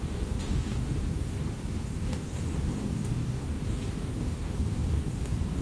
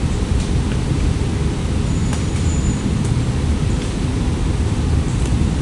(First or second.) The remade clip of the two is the first